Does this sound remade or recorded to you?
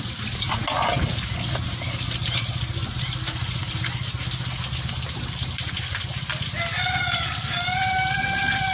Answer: recorded